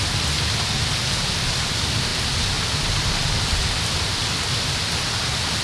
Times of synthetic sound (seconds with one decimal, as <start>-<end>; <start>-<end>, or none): none